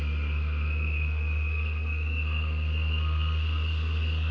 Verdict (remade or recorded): remade